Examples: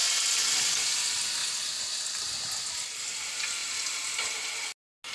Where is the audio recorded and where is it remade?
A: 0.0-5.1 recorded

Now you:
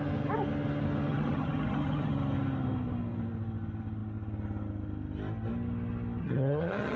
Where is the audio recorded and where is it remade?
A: 0.0-1.1 recorded; 1.1-2.1 remade; 2.1-6.2 recorded; 6.2-7.0 remade

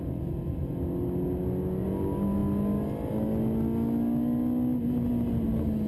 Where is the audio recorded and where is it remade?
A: 0.0-5.9 recorded